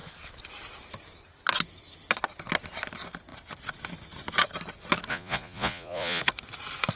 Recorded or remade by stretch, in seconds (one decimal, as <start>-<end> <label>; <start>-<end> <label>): 0.0-5.1 recorded; 5.1-6.2 remade; 6.2-7.0 recorded